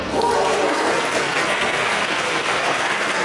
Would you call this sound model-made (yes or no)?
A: yes